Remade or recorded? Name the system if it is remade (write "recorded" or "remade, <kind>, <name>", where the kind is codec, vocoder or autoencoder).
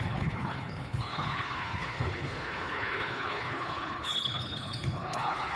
remade, codec, HILCodec